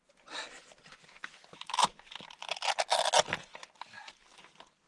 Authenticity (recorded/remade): recorded